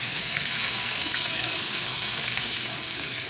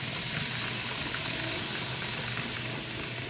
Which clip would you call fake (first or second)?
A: first